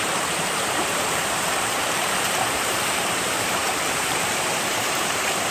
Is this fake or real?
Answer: fake